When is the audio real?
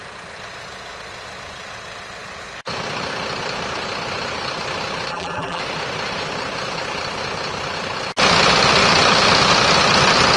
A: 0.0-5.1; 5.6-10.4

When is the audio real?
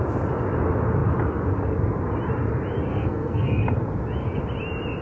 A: 0.0-2.9; 3.6-5.0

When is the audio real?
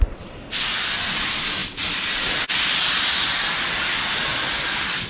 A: 0.0-5.1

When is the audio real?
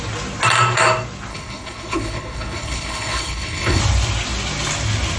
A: 0.0-1.3; 3.8-5.2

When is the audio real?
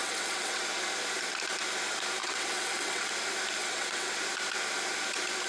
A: 0.6-2.2; 3.1-3.6; 4.1-5.5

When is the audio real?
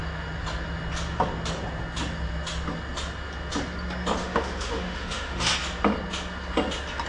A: 0.0-4.2; 5.5-7.1